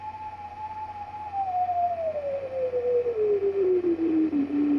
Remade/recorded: remade